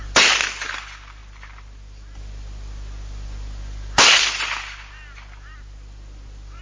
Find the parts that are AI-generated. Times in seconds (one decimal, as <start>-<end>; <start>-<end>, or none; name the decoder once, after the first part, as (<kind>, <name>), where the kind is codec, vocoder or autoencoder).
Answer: none